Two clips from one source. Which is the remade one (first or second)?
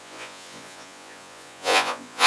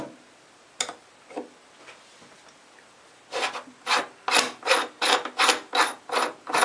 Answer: first